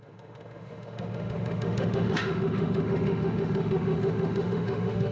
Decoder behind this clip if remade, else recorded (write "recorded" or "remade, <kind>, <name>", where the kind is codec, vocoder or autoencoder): remade, autoencoder, DAC-VAE